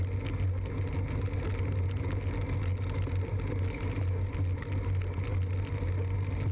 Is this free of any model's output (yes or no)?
yes